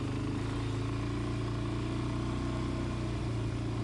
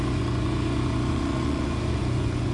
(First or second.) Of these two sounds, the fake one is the second